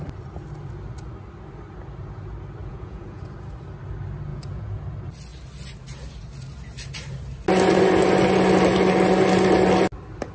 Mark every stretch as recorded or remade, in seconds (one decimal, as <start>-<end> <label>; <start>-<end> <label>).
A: 0.0-2.6 recorded; 2.6-3.2 remade; 3.2-4.3 recorded; 4.3-4.8 remade; 4.8-10.3 recorded